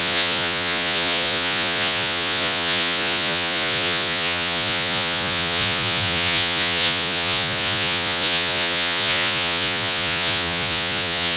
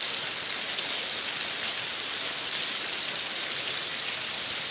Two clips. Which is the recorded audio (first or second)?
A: second